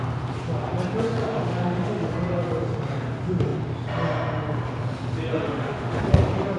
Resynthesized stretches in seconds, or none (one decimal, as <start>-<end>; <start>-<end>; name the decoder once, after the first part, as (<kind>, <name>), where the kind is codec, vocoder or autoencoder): 1.2-2.1 (autoencoder, DAC-VAE); 5.3-6.0